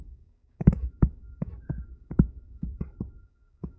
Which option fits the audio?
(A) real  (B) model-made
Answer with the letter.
B